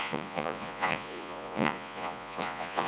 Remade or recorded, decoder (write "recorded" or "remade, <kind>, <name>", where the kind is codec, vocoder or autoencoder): remade, vocoder, Vocos